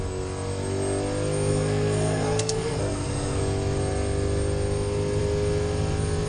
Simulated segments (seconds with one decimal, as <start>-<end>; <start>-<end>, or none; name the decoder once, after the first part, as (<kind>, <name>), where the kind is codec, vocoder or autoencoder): 1.5-3.4 (codec, SNAC)